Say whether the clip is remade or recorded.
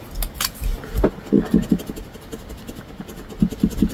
recorded